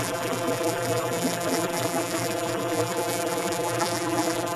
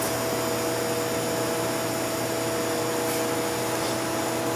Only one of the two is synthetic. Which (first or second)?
first